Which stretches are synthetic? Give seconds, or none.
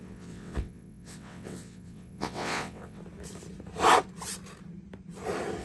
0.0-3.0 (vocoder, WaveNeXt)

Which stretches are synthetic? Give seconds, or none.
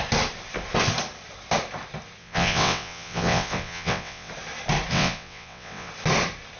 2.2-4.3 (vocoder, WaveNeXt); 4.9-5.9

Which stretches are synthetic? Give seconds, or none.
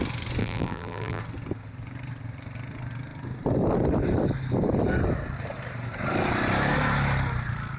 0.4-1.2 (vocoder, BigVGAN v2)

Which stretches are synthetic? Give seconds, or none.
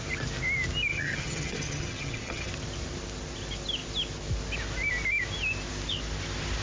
0.9-2.5 (vocoder, HiFi-GAN)